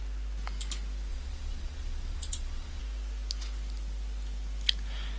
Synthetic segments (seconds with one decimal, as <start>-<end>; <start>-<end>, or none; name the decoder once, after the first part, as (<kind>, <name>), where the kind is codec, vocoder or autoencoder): 1.1-2.8 (vocoder, Vocos)